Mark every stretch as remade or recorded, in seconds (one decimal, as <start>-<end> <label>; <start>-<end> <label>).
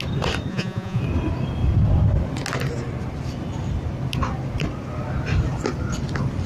0.0-0.5 recorded; 0.5-1.0 remade; 1.0-6.5 recorded